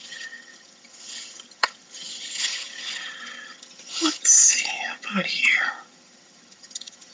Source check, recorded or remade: remade